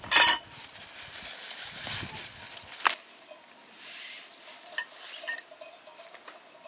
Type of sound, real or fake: real